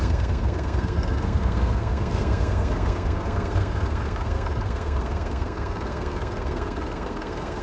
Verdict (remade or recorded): remade